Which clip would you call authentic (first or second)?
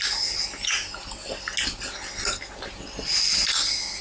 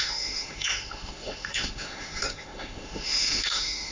first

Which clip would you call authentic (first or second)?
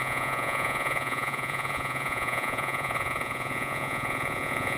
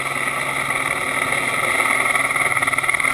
second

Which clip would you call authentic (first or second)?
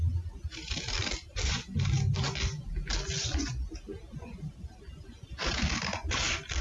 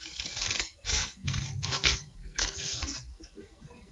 first